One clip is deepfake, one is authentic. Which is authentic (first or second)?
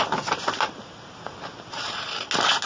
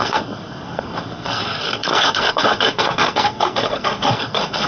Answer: first